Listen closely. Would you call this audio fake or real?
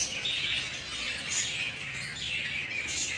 real